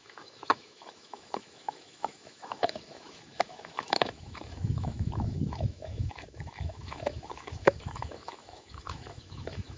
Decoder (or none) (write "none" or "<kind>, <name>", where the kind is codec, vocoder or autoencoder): autoencoder, DAC-VAE